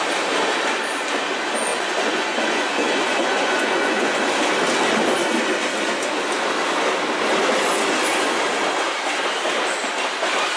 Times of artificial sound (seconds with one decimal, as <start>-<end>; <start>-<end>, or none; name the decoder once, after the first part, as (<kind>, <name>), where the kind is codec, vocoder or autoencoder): 1.7-4.2 (vocoder, Vocos)